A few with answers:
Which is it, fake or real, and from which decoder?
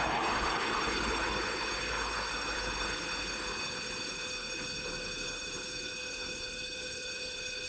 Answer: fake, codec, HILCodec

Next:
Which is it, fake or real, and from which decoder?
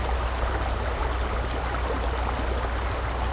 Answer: real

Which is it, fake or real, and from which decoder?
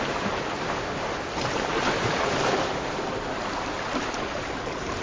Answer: fake, vocoder, BigVGAN v2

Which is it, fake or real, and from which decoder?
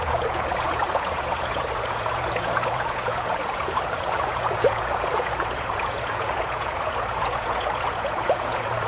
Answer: fake, vocoder, Vocos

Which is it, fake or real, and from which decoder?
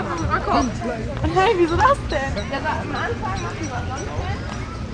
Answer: real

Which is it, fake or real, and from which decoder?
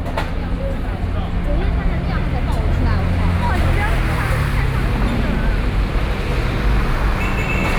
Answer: real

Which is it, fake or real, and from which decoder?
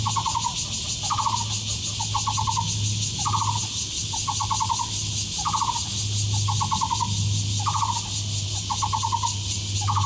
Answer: real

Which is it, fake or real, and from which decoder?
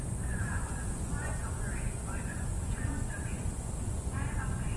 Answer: fake, vocoder, Vocos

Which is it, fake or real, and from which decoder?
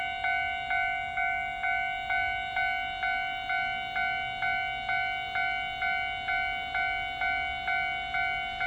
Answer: real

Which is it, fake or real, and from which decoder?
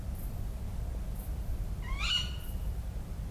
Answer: real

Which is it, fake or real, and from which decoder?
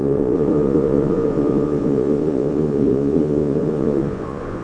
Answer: fake, vocoder, Vocos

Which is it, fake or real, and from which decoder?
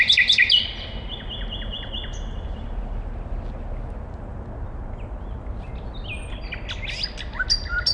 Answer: real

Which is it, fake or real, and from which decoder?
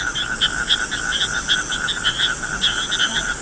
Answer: real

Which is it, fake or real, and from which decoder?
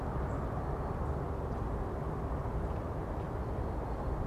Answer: real